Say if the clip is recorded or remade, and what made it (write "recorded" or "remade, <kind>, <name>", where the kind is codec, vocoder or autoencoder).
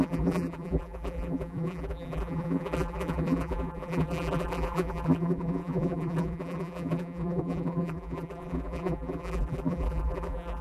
remade, vocoder, BigVGAN v2